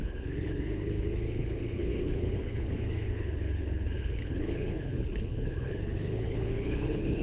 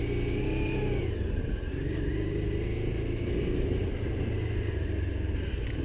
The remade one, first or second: first